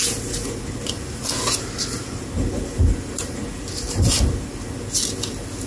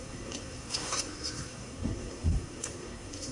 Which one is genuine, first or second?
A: first